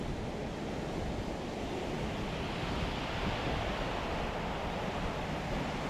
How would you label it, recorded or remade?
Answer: recorded